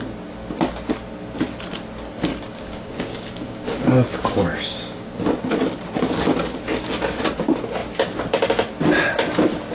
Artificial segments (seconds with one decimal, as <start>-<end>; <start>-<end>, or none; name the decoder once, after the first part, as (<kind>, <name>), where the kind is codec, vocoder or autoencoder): 2.3-5.3 (codec, DAC)

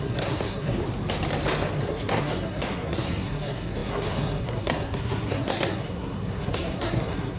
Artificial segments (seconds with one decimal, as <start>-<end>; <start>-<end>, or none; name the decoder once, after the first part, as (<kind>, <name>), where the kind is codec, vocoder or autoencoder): 0.0-0.8 (codec, SNAC); 1.8-7.4

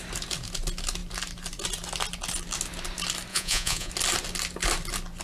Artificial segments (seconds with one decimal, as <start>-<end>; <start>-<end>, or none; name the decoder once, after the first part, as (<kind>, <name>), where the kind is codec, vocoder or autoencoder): 3.3-3.9 (vocoder, Vocos)

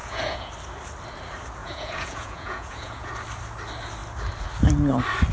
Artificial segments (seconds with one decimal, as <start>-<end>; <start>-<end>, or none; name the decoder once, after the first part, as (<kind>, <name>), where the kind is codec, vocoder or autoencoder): 0.0-0.5 (vocoder, Vocos); 1.6-3.1

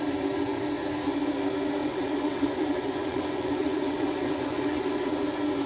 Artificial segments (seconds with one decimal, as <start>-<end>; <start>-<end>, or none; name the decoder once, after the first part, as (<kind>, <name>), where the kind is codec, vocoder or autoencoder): 1.8-5.2 (vocoder, WaveNeXt)

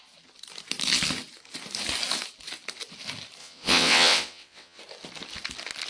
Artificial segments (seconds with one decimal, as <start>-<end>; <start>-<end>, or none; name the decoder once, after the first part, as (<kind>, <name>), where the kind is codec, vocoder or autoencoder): 3.4-4.8 (vocoder, WaveNeXt)